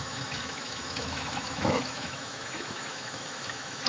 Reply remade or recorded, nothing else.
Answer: remade